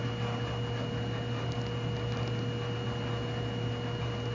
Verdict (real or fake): real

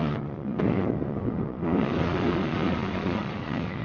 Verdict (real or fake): fake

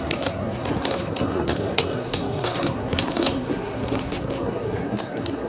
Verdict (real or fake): fake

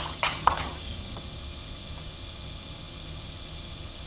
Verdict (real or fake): fake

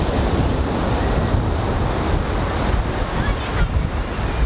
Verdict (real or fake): real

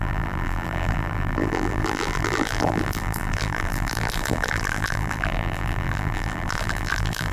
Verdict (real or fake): fake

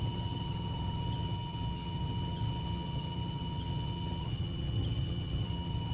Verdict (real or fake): fake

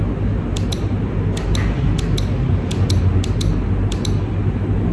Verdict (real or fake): real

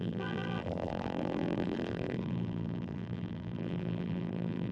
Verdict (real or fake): fake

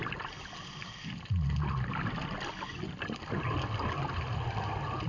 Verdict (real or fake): real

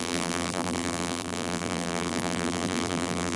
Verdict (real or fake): fake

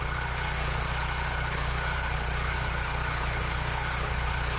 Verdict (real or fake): fake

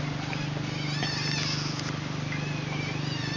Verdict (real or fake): real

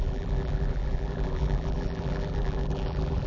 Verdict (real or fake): fake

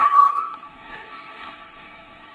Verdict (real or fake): fake